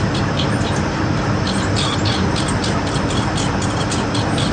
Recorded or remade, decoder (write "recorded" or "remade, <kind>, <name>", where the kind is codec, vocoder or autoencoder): remade, vocoder, BigVGAN v2